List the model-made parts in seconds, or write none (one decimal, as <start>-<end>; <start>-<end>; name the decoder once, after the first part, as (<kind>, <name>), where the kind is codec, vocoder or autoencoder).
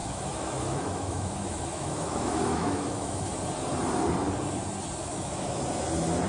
0.0-3.3 (autoencoder, DAC-VAE); 5.0-5.6